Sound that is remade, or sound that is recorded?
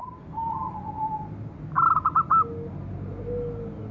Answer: recorded